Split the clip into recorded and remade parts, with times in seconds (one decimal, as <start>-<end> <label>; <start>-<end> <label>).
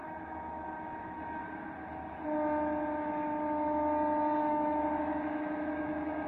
0.0-1.4 remade; 1.4-4.4 recorded; 4.4-6.3 remade